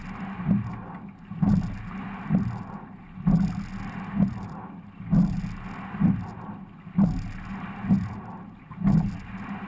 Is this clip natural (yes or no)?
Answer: yes